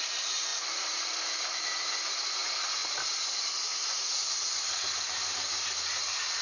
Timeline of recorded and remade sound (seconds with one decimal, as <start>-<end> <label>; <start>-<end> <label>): 0.0-6.4 recorded